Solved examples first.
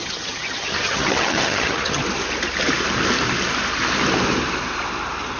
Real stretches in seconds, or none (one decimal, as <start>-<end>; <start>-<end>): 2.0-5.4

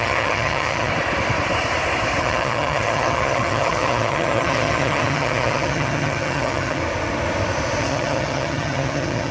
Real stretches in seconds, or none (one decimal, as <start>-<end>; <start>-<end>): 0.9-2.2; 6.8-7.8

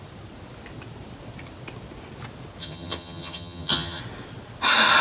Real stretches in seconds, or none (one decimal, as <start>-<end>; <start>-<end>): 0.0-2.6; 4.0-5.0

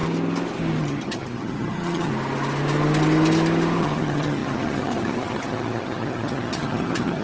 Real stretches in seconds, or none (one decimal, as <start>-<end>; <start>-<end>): 0.0-0.8; 2.1-3.8

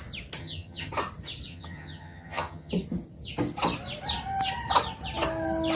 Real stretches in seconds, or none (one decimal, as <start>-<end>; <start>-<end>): 0.0-0.4; 0.9-1.5; 2.7-5.8

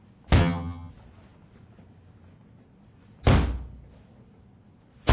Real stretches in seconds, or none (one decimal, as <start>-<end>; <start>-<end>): 0.0-0.4; 0.9-5.1